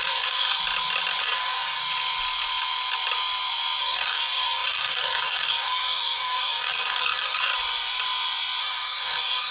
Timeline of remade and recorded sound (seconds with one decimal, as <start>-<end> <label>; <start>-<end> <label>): 0.0-0.6 remade; 0.6-1.2 recorded; 1.2-1.8 remade; 1.8-3.8 recorded; 3.8-7.5 remade; 7.5-8.6 recorded; 8.6-9.5 remade